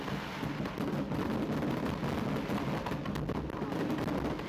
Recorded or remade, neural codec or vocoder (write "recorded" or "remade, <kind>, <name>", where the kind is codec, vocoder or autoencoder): recorded